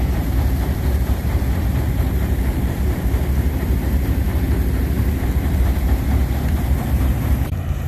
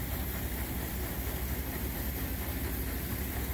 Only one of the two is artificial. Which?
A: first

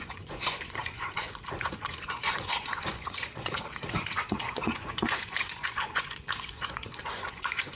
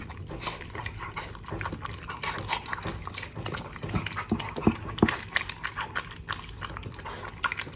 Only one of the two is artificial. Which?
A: first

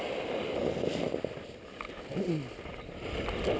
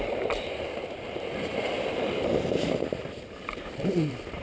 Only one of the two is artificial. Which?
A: second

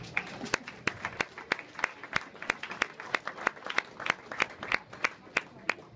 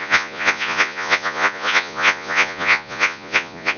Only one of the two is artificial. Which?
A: second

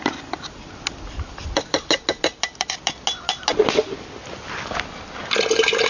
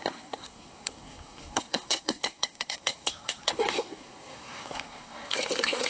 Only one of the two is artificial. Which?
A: second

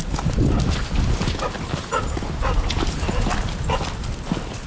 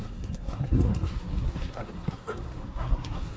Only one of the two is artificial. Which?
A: second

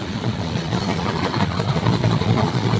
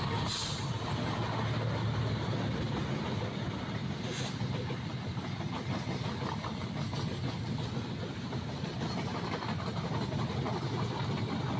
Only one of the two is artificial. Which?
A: first